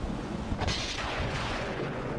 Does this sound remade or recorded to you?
remade